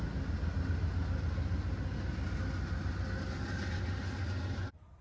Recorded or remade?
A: recorded